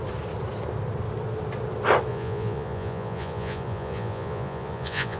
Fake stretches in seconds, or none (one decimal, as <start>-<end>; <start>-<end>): 2.1-5.2